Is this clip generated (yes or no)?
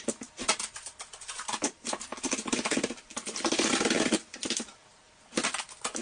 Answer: no